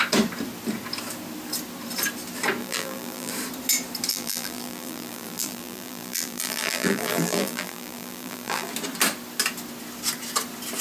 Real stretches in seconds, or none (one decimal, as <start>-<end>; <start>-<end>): 0.0-2.6; 3.3-4.1; 8.7-10.8